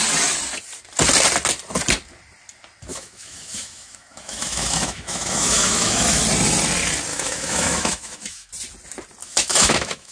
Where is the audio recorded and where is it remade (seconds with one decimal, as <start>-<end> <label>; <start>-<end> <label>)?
0.0-2.9 recorded; 2.9-6.2 remade; 6.2-7.1 recorded; 7.1-8.5 remade; 8.5-9.2 recorded; 9.2-10.1 remade